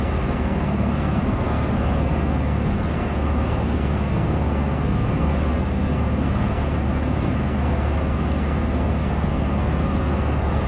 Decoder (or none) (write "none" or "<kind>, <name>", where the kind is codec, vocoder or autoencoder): codec, SNAC